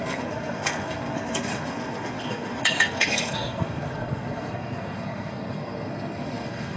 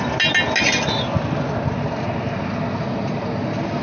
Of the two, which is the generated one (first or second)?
first